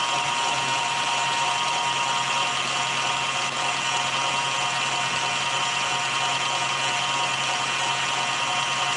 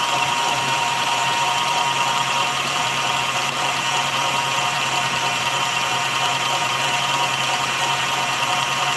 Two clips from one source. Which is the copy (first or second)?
second